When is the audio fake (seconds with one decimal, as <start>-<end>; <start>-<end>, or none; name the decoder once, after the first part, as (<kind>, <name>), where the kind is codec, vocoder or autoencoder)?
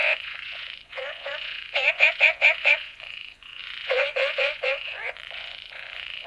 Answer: 0.0-6.3 (vocoder, Vocos)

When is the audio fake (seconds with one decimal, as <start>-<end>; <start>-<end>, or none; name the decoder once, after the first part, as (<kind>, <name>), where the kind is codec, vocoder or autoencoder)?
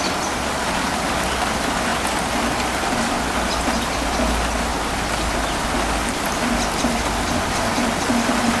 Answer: none